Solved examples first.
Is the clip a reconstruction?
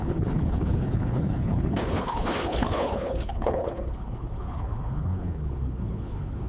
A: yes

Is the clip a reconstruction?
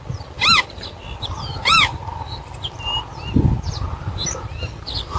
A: no